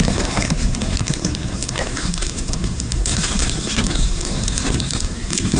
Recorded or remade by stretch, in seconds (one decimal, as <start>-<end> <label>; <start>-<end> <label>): 0.0-5.6 remade